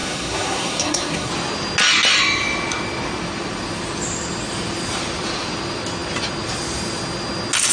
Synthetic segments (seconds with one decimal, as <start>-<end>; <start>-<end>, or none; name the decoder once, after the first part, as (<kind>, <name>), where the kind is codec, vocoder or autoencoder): 0.0-1.3 (codec, SNAC)